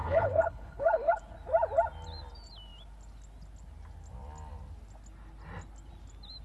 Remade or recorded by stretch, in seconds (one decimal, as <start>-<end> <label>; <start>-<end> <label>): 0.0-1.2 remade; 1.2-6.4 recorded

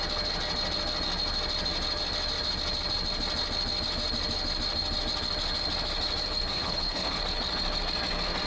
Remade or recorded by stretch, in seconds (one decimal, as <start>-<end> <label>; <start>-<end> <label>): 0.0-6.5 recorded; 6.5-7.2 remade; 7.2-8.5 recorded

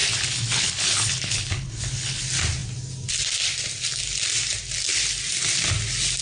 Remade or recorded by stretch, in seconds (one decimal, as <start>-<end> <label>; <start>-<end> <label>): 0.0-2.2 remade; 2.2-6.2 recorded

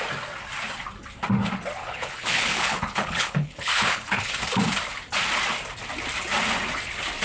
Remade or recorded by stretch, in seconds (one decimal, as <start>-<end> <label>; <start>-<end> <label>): 0.0-1.8 recorded; 1.8-4.2 remade; 4.2-7.2 recorded

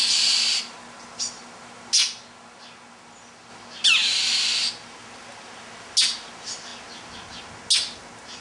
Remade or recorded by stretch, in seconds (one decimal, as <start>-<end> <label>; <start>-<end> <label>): 0.0-8.4 recorded